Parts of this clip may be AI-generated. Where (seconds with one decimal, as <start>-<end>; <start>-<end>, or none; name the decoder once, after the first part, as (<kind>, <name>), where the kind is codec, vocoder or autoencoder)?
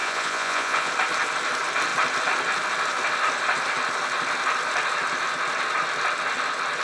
0.0-0.9 (vocoder, Vocos)